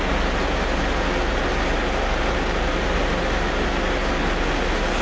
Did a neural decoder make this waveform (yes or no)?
no